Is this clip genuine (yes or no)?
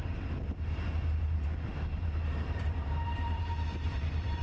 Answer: no